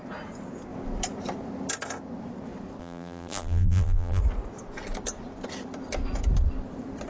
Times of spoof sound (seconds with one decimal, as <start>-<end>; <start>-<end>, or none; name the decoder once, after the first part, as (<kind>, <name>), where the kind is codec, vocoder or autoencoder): 2.8-4.2 (vocoder, BigVGAN v2)